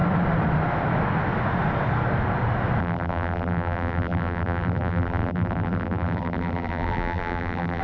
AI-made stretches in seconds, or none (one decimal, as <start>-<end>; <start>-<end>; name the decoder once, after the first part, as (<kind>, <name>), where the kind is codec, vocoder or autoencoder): 2.8-7.8 (vocoder, BigVGAN v2)